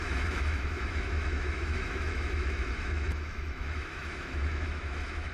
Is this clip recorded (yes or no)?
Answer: no